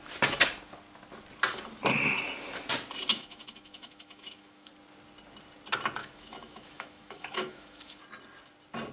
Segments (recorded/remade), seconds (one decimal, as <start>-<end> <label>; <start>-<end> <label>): 0.0-3.1 recorded; 3.1-4.7 remade; 4.7-6.0 recorded; 6.0-8.0 remade; 8.0-8.9 recorded